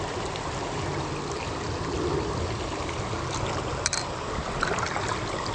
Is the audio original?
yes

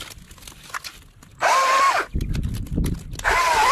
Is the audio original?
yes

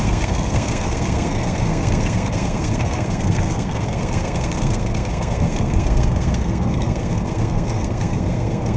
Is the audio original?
no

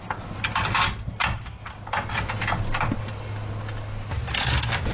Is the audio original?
yes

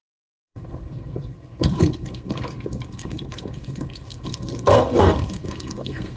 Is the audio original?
no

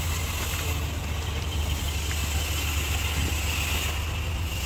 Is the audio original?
yes